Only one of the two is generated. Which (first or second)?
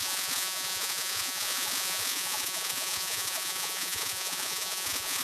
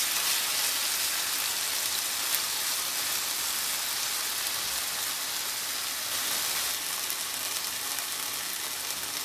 first